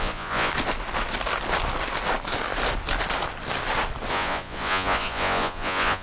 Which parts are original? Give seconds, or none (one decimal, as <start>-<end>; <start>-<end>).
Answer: 0.5-4.1